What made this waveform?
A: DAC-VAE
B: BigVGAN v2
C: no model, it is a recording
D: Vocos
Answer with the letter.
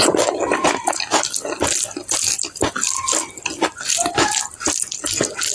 C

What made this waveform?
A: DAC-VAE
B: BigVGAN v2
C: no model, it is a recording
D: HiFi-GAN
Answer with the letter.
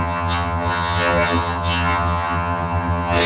D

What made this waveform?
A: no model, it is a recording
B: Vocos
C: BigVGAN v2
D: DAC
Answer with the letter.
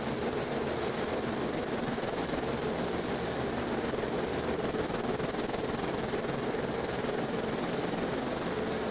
A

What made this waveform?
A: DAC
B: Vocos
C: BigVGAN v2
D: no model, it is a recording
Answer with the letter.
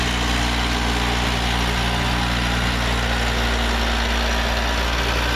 D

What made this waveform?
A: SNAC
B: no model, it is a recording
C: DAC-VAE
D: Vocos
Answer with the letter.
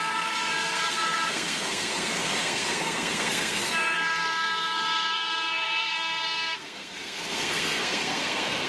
A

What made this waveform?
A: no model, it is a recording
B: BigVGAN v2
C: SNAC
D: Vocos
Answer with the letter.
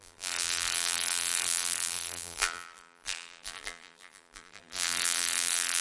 B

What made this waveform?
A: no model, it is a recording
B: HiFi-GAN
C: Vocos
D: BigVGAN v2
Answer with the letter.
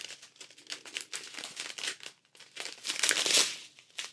A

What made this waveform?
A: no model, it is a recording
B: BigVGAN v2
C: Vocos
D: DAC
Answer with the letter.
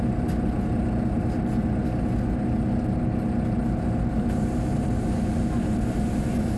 A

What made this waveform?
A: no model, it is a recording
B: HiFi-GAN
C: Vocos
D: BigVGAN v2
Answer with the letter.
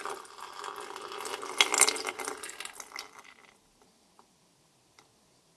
A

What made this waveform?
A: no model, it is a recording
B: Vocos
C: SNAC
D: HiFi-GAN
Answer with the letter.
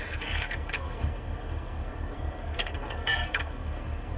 C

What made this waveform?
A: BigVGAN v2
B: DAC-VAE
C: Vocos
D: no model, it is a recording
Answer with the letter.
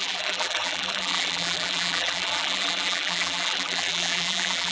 A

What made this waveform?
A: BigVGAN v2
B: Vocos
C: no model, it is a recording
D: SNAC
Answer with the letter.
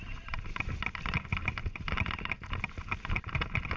C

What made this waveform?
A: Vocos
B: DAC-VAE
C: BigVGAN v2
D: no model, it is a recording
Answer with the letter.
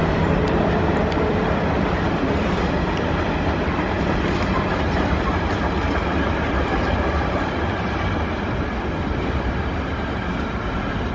C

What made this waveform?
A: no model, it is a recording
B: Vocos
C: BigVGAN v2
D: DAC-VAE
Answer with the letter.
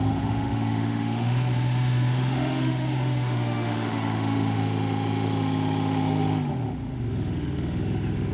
D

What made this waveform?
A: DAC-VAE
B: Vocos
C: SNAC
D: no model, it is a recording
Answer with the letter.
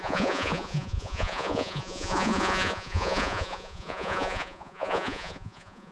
B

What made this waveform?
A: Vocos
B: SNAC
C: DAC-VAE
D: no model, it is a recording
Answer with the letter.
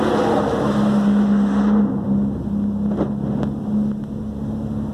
D